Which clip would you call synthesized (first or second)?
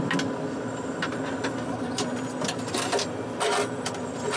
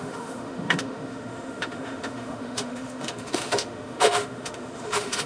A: second